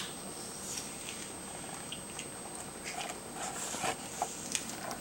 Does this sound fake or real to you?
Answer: real